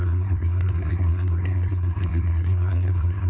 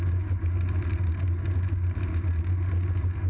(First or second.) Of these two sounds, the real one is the second